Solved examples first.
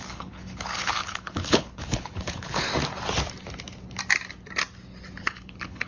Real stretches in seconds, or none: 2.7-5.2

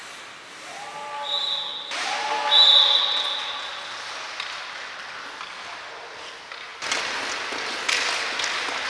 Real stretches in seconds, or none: 0.0-8.9

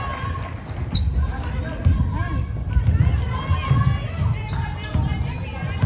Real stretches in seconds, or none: 0.0-5.9

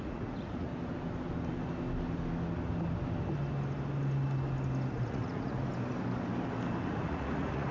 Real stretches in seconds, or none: 0.7-4.9; 5.7-6.9

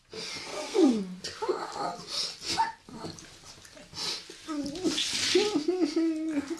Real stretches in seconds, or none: 0.0-0.5; 1.0-6.6